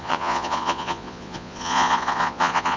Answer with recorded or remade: remade